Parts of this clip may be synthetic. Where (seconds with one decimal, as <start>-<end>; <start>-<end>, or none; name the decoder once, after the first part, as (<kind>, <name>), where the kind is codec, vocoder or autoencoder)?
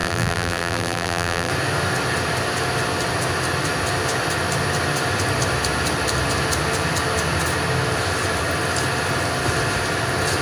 0.0-1.5 (vocoder, BigVGAN v2)